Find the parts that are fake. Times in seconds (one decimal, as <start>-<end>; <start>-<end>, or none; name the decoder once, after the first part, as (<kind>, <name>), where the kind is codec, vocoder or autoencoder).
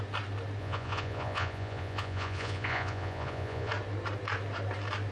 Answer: 0.6-3.7 (vocoder, Vocos)